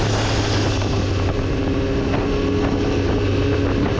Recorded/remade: recorded